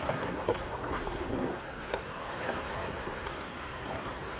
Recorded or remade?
remade